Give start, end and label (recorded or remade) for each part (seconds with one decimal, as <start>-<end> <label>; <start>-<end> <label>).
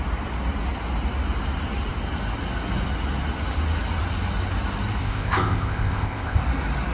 0.0-5.0 recorded; 5.0-6.4 remade; 6.4-6.9 recorded